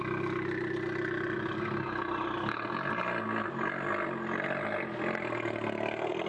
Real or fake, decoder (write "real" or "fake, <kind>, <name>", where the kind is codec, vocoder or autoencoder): real